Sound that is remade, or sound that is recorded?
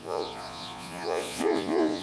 remade